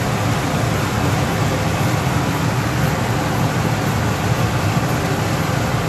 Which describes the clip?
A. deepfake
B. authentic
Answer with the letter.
B